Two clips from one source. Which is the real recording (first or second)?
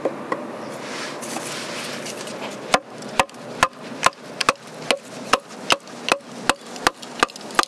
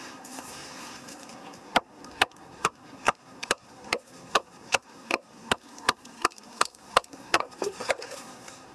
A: first